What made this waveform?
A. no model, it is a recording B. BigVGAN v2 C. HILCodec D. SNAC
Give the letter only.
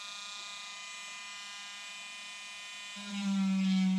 A